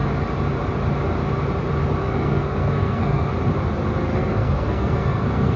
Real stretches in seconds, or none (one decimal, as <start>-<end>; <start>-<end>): 0.0-2.0; 3.3-4.1